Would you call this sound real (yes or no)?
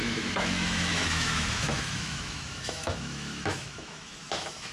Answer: no